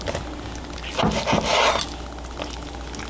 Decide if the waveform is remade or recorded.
recorded